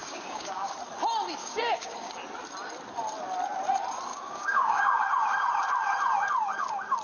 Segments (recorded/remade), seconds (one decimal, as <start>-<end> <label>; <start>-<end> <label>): 0.0-0.7 remade; 0.7-1.4 recorded; 1.4-2.1 remade; 2.1-4.1 recorded; 4.1-5.0 remade; 5.0-7.0 recorded